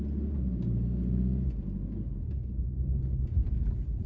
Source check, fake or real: real